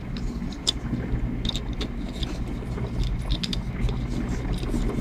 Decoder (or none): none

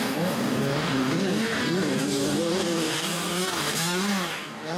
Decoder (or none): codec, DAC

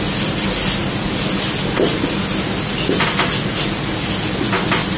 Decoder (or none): none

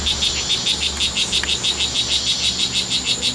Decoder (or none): none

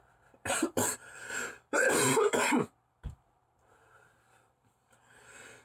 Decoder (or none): vocoder, BigVGAN v2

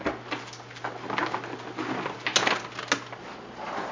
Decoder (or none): none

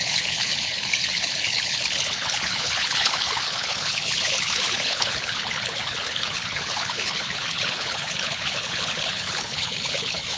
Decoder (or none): codec, HILCodec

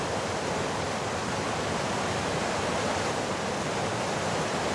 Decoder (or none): none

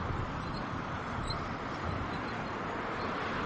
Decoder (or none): none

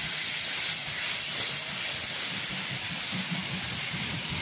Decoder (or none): none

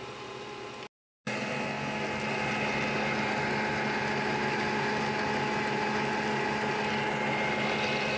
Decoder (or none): none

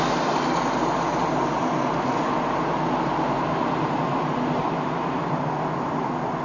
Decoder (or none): none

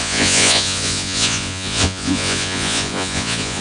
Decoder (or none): vocoder, Vocos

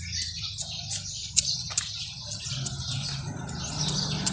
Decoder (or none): none